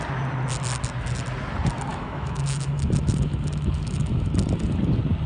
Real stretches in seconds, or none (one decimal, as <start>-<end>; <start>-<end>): 0.0-1.9; 4.3-5.3